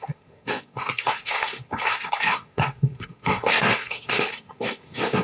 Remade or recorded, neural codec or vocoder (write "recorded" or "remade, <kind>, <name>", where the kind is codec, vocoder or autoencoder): remade, codec, SNAC